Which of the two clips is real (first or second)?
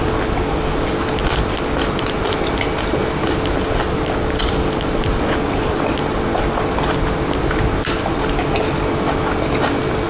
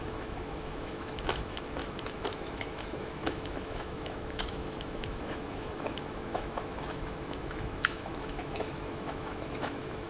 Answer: first